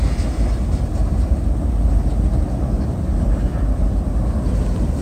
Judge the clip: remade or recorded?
recorded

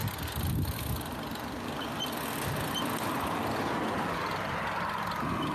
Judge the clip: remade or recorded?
recorded